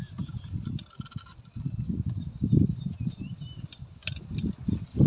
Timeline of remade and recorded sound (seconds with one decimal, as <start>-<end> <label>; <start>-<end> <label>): 0.0-5.1 recorded